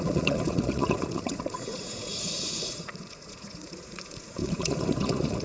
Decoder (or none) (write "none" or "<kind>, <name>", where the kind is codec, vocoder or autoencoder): vocoder, Vocos